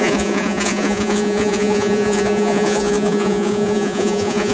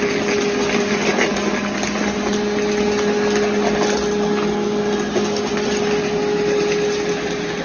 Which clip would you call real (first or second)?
second